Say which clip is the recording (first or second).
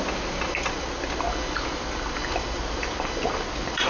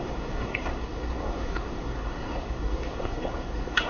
first